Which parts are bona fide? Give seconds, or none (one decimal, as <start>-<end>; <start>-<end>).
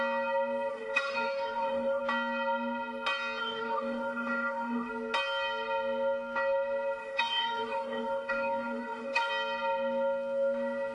0.0-0.7; 2.0-3.4; 4.9-7.0; 9.3-10.9